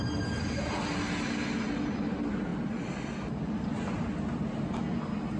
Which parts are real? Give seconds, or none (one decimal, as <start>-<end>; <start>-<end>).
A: 0.0-5.4